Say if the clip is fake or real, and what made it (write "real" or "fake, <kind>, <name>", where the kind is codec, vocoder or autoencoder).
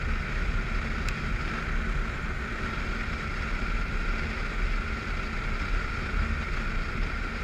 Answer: real